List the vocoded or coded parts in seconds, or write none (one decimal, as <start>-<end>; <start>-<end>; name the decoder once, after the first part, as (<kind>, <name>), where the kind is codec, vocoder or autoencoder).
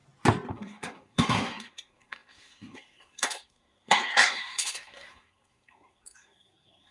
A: 0.5-6.9 (codec, SNAC)